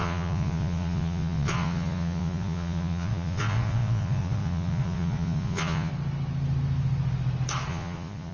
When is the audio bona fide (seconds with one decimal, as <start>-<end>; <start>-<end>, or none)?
5.9-7.7

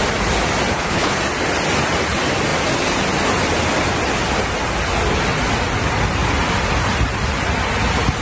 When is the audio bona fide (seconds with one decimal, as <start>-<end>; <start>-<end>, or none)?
0.0-0.7; 1.2-8.2

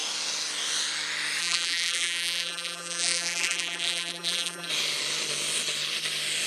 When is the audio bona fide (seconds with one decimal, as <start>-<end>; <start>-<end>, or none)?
0.0-1.4; 4.7-6.5